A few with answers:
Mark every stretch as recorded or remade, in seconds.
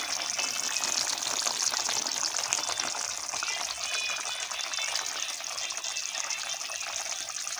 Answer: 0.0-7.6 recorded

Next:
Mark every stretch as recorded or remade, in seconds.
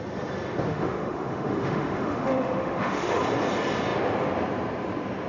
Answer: 0.0-0.7 recorded; 0.7-3.2 remade; 3.2-5.3 recorded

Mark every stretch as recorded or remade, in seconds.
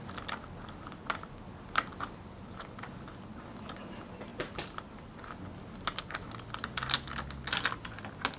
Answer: 0.0-8.4 recorded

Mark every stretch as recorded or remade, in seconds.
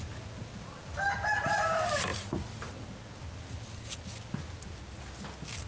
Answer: 0.0-5.7 recorded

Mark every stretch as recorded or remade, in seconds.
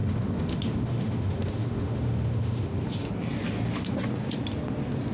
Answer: 0.0-3.1 remade; 3.1-5.1 recorded